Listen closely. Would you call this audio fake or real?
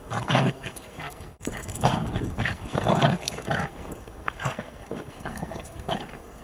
fake